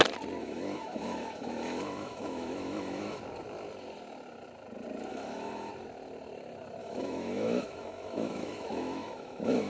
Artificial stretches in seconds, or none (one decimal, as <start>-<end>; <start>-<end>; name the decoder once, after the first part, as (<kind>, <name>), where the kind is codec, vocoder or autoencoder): 0.4-3.2 (autoencoder, DAC-VAE); 5.1-5.7; 6.8-9.7